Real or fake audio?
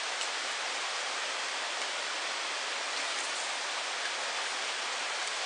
real